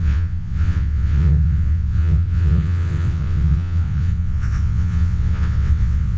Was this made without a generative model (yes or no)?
no